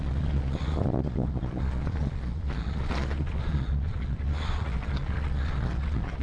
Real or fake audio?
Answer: fake